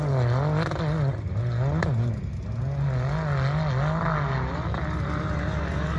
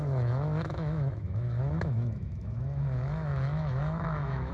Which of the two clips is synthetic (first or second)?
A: second